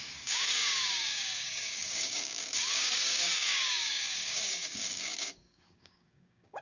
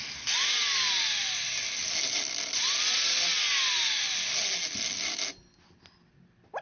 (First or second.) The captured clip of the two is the second